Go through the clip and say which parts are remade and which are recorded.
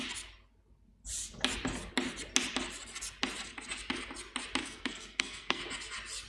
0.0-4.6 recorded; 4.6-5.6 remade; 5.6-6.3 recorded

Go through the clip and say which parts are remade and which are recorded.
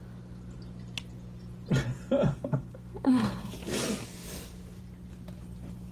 0.0-2.3 recorded; 2.3-3.5 remade; 3.5-5.9 recorded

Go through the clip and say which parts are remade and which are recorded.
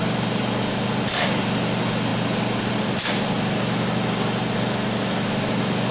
0.0-5.9 recorded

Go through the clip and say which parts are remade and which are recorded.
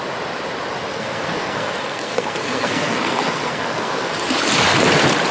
0.0-0.9 recorded; 0.9-4.1 remade; 4.1-5.3 recorded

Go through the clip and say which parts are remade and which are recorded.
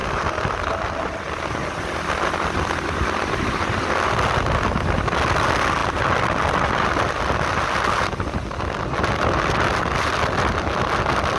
0.0-11.4 recorded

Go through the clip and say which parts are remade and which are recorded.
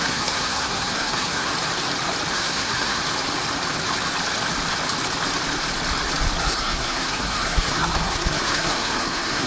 0.0-1.5 remade; 1.5-2.3 recorded; 2.3-3.0 remade; 3.0-6.4 recorded; 6.4-9.5 remade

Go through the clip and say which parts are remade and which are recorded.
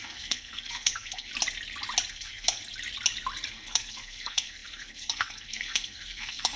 0.0-1.3 remade; 1.3-2.1 recorded; 2.1-2.6 remade; 2.6-3.5 recorded; 3.5-6.6 remade